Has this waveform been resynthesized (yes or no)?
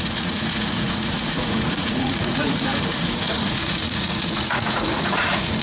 yes